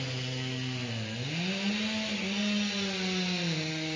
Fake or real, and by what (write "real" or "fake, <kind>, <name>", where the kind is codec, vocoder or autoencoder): real